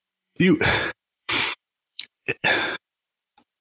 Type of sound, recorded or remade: remade